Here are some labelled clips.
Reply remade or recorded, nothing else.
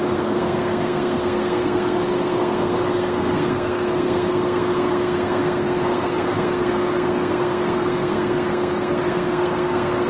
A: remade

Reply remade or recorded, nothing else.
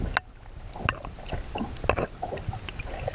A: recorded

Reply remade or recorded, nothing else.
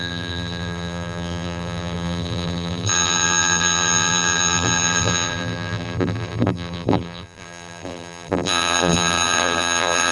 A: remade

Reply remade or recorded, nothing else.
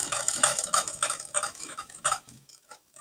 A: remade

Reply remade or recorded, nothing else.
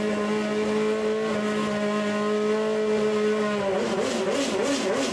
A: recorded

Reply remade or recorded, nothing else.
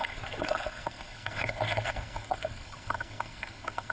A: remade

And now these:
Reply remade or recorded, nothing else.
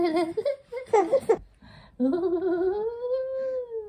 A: recorded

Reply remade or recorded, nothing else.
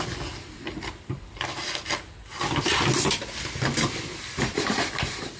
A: recorded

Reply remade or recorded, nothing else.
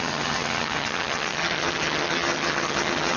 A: remade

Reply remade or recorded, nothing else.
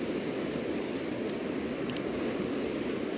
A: recorded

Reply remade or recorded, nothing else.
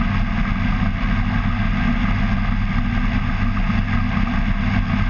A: recorded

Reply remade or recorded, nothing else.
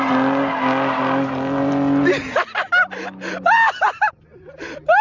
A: recorded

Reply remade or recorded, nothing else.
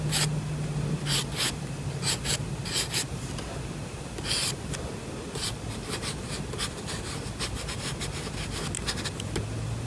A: recorded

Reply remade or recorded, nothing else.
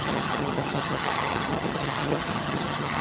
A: remade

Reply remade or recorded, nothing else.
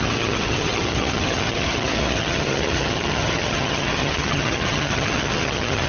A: remade